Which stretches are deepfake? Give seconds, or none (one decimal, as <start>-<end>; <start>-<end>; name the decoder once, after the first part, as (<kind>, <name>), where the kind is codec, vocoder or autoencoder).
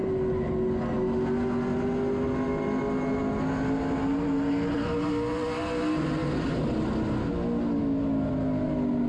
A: none